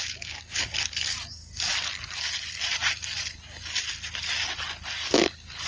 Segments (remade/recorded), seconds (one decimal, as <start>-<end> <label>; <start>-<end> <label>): 0.0-1.7 remade; 1.7-5.1 recorded; 5.1-5.7 remade